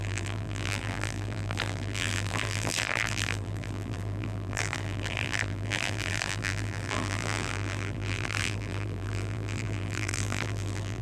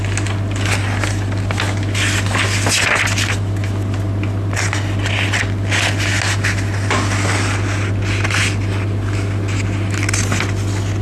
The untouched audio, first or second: second